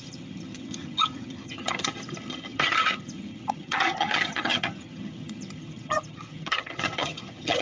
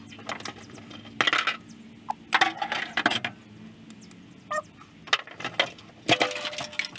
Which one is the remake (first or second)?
first